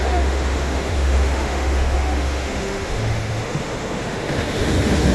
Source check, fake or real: fake